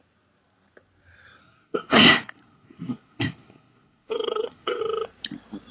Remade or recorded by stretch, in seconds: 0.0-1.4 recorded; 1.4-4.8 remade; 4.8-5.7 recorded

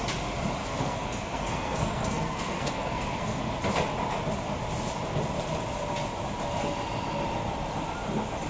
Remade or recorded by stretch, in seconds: 0.0-0.6 recorded; 0.6-3.4 remade; 3.4-8.5 recorded

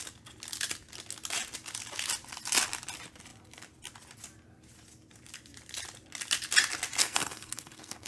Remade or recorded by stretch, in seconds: 0.0-7.0 recorded; 7.0-8.1 remade

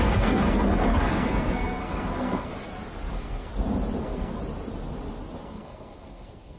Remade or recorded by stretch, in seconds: 0.0-2.5 remade; 2.5-3.1 recorded; 3.1-3.5 remade; 3.5-4.0 recorded; 4.0-4.4 remade; 4.4-5.4 recorded; 5.4-6.6 remade